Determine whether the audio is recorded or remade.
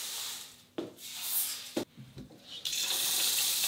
remade